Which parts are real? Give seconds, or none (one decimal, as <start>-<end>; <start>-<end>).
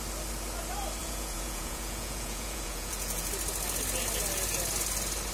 0.0-1.0; 3.3-5.3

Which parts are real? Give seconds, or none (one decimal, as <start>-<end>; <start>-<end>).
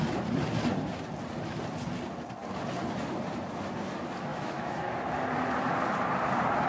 0.0-4.3; 4.9-6.7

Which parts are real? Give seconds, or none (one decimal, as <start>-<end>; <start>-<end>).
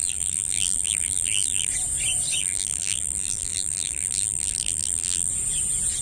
1.7-2.4; 5.3-6.0